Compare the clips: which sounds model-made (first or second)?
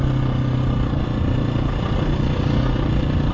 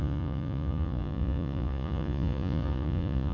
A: second